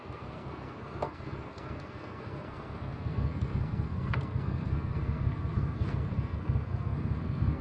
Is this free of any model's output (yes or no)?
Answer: no